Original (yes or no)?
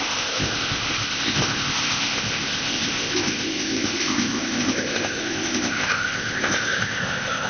no